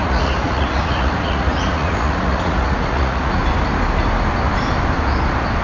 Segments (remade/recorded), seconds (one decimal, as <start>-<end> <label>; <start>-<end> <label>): 0.0-3.4 remade; 3.4-5.6 recorded